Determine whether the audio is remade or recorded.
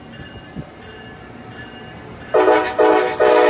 recorded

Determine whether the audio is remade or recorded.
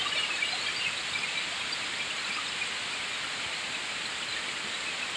recorded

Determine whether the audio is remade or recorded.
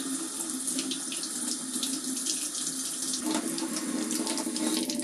recorded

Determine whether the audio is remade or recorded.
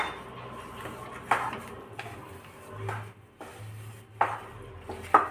recorded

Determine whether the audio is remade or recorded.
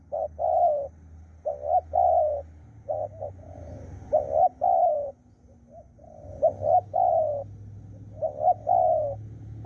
recorded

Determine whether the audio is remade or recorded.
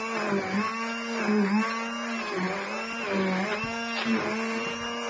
recorded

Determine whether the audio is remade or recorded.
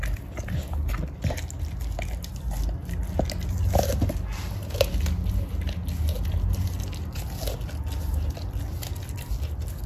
recorded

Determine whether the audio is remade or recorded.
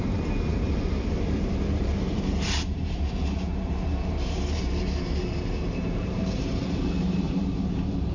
remade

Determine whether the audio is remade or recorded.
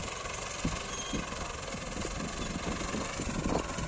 recorded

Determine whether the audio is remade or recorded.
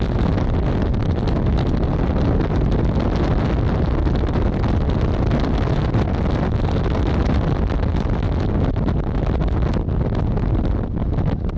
recorded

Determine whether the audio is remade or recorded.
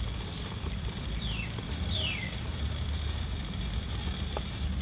remade